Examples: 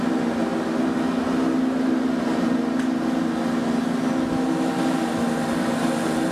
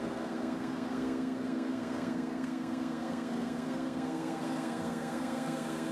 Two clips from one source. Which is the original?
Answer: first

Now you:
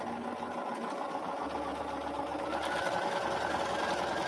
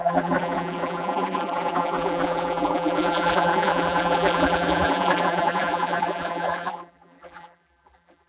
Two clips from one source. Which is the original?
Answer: first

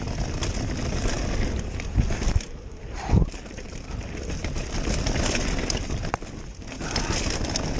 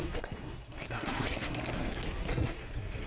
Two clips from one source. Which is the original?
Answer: first